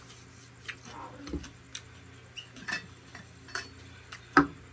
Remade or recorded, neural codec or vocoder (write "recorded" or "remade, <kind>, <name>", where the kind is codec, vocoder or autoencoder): recorded